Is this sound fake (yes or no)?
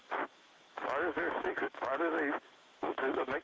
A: yes